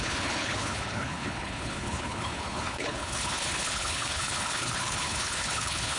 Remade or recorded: remade